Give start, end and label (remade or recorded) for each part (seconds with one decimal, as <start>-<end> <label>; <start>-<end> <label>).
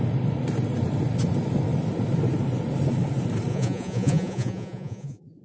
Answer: 0.0-3.5 recorded; 3.5-5.4 remade